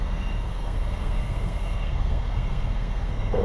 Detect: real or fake fake